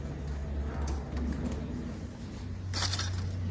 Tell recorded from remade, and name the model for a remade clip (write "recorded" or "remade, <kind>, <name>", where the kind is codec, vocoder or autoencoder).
recorded